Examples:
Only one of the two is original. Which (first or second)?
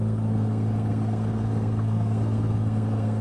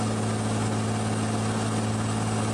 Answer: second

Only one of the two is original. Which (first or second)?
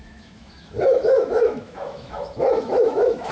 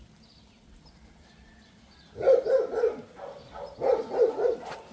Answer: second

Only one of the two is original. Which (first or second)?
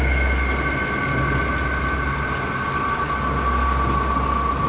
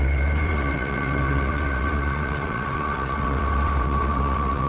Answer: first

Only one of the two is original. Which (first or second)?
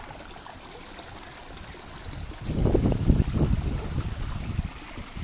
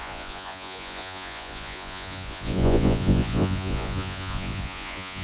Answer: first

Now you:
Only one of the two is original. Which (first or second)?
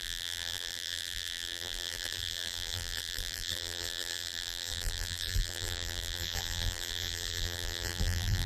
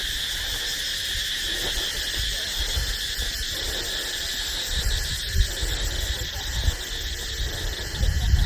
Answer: second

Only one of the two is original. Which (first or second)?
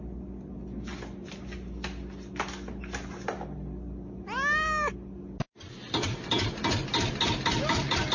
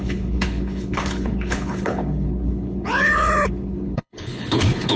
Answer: first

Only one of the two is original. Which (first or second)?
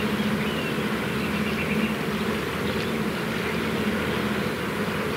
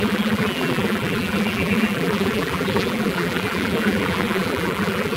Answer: first